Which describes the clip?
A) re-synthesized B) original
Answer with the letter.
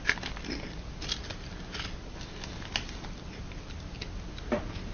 B